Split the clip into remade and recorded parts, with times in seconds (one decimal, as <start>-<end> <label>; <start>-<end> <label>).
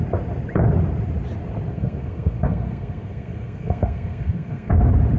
0.0-1.7 recorded; 1.7-4.8 remade; 4.8-5.2 recorded